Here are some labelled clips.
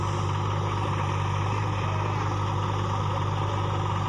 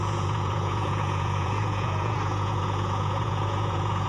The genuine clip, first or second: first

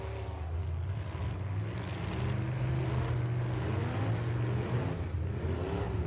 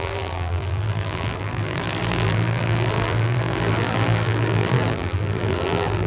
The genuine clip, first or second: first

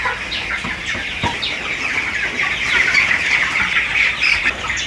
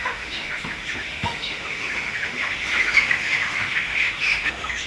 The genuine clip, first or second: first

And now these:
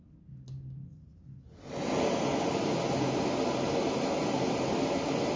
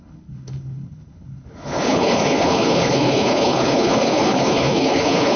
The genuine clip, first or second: first